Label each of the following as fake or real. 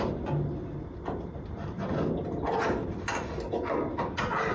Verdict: real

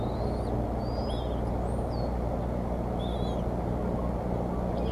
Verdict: real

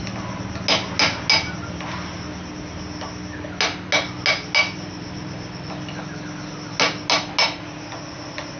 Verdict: real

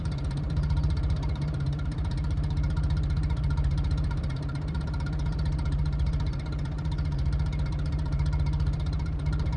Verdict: fake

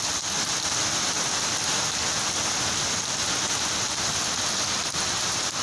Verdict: real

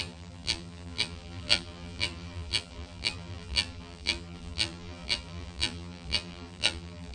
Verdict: fake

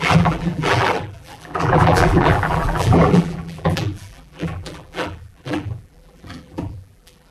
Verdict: fake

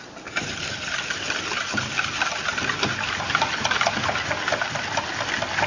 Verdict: real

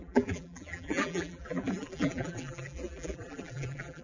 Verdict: fake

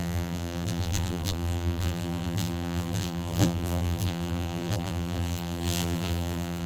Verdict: fake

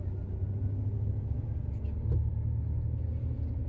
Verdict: real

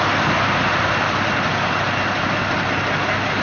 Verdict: real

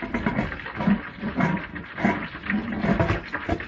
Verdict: real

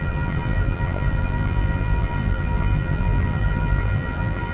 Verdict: fake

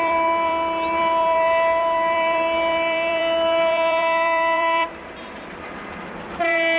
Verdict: fake